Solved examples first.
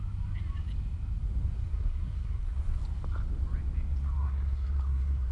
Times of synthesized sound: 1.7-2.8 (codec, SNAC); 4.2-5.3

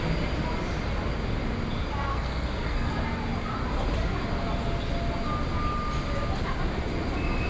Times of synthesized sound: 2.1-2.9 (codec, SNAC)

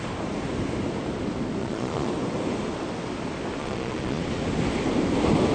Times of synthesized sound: 1.6-2.1 (vocoder, Vocos); 3.6-4.2